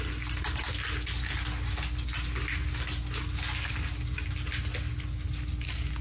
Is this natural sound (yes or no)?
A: yes